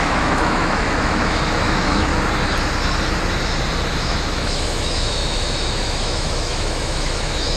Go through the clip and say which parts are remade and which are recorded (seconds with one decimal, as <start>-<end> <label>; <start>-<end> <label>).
0.0-2.1 remade; 2.1-3.9 recorded; 3.9-7.6 remade